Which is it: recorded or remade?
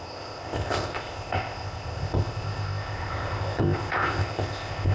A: remade